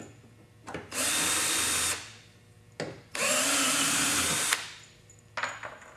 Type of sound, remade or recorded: recorded